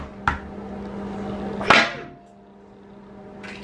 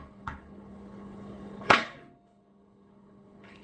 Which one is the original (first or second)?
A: first